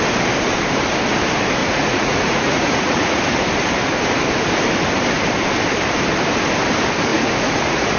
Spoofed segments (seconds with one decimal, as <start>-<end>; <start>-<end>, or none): 1.6-3.2; 7.1-8.0